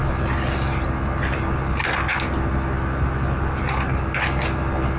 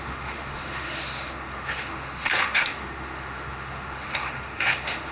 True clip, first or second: first